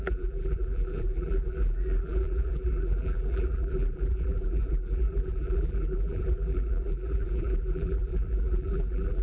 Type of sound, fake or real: fake